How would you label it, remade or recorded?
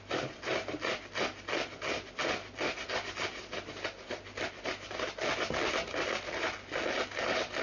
recorded